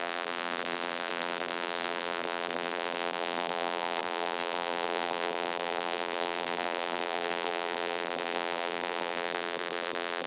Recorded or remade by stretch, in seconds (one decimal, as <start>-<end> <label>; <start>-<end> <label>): 0.0-10.3 remade